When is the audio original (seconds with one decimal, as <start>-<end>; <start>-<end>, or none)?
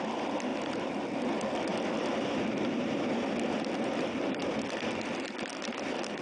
0.5-1.2; 1.7-3.1